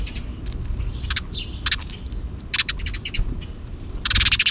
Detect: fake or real real